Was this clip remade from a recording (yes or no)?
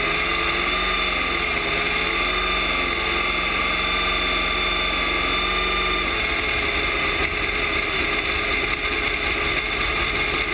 no